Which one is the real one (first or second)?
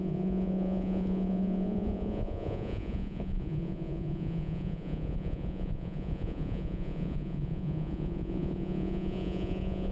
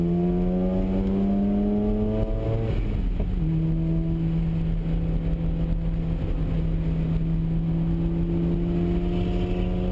second